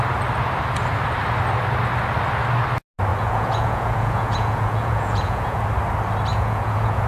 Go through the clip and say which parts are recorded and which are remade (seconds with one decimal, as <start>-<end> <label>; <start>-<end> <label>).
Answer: 0.0-3.1 recorded; 3.1-5.6 remade; 5.6-6.3 recorded; 6.3-7.1 remade